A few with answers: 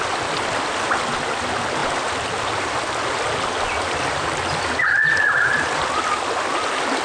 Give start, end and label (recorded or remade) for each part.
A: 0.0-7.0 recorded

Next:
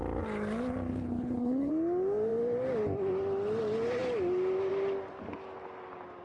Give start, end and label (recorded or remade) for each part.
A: 0.0-0.9 recorded; 0.9-1.7 remade; 1.7-6.2 recorded